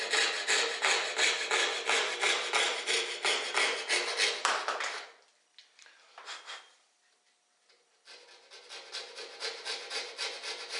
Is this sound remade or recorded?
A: recorded